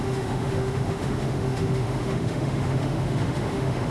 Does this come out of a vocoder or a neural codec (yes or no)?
yes